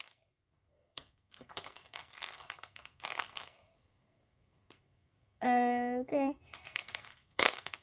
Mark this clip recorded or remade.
remade